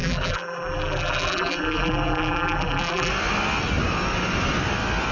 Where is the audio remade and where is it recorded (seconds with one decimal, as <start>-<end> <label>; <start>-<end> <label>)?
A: 0.0-3.1 remade; 3.1-5.1 recorded